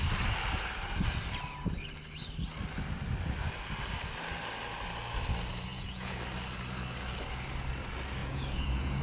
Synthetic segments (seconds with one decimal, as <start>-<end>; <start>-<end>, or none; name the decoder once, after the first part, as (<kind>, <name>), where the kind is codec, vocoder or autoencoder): 5.7-6.2 (vocoder, Vocos); 8.2-9.0